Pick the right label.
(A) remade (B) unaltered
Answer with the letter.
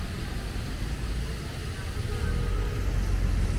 B